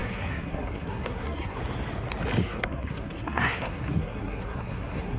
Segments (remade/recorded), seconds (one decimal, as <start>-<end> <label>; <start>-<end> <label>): 0.0-1.6 remade; 1.6-2.4 recorded; 2.4-5.2 remade